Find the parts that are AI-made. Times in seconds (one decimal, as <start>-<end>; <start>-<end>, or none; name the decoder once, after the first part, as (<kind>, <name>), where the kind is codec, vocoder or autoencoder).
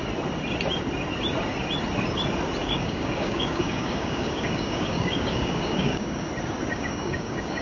2.6-6.3 (codec, DAC); 6.7-7.6